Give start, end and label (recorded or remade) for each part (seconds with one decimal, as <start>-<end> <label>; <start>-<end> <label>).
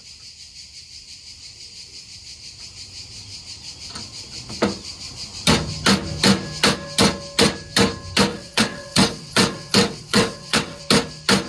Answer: 0.0-8.3 recorded; 8.3-10.8 remade; 10.8-11.5 recorded